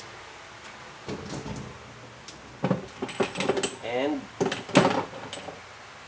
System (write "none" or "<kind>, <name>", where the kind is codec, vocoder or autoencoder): none